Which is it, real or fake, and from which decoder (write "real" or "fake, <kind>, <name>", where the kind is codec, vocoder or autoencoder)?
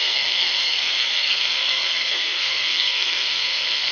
fake, codec, SNAC